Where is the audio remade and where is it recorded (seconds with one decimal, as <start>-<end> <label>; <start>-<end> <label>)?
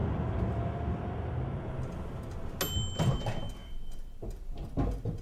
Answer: 0.0-3.6 recorded; 3.6-4.8 remade; 4.8-5.2 recorded